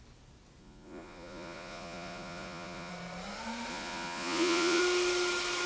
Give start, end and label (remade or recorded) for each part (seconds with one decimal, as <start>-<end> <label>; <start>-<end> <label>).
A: 0.0-0.6 recorded; 0.6-2.9 remade; 2.9-3.7 recorded; 3.7-4.8 remade; 4.8-5.7 recorded